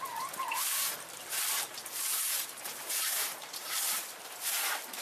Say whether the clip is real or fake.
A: fake